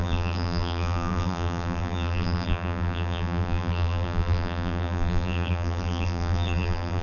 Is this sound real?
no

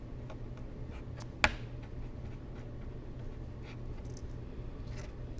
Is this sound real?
yes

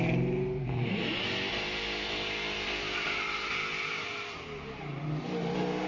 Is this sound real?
yes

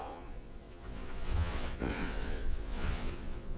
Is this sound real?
no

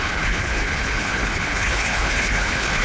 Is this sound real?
no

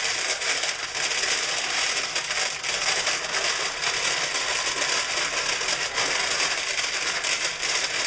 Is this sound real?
yes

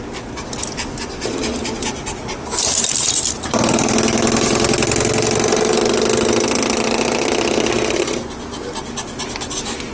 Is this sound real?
yes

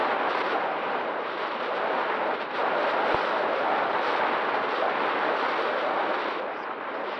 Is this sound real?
yes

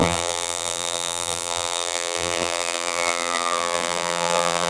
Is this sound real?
no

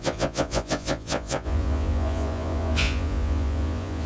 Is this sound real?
no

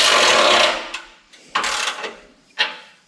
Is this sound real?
yes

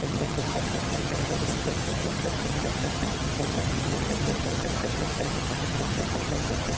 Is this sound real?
no